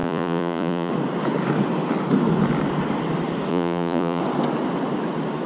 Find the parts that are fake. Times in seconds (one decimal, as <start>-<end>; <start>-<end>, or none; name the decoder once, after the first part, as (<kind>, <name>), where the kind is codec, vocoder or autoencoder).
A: 0.0-0.9 (vocoder, Vocos); 3.5-4.2